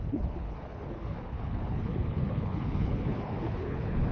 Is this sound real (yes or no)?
no